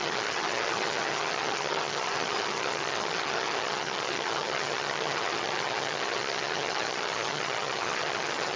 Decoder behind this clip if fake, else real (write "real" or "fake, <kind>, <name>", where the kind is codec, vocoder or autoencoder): fake, vocoder, HiFi-GAN